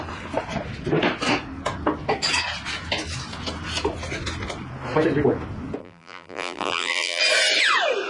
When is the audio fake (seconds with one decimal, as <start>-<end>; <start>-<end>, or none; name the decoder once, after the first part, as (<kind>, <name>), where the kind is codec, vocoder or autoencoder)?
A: 5.8-7.2 (vocoder, BigVGAN v2)